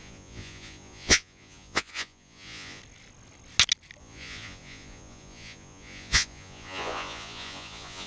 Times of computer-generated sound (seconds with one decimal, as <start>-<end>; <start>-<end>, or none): 0.0-2.8; 4.0-8.1